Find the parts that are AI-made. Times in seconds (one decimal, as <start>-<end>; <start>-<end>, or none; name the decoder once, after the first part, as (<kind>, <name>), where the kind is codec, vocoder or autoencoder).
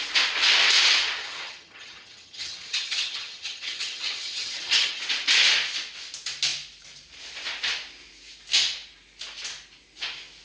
1.2-5.0 (vocoder, HiFi-GAN)